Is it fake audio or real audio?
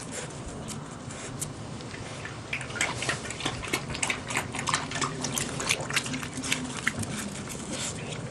real